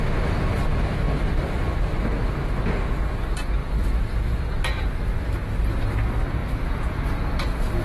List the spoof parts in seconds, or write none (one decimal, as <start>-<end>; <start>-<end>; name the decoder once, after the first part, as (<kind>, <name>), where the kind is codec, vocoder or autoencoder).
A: 3.6-4.4 (vocoder, Vocos); 6.4-7.2